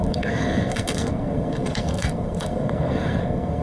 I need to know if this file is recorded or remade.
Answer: remade